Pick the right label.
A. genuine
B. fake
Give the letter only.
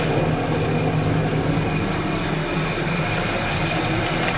A